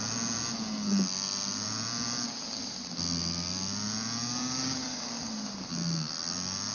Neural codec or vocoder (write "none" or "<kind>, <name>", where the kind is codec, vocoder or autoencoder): none